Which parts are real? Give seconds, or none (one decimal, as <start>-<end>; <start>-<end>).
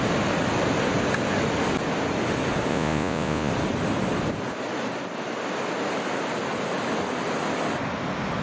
0.0-2.7; 3.5-8.4